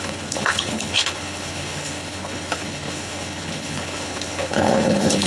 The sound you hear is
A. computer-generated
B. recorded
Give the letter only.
A